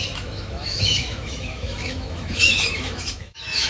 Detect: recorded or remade remade